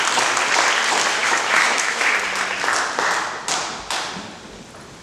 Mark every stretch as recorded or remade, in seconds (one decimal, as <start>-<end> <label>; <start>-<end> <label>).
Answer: 0.0-1.2 recorded; 1.2-2.0 remade; 2.0-5.0 recorded